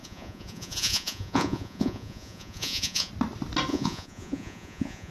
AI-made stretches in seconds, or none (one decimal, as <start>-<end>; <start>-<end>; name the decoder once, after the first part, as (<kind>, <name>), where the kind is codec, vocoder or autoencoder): 0.0-3.1 (vocoder, Vocos); 3.7-5.1